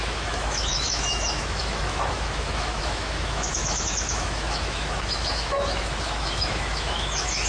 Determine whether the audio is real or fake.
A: fake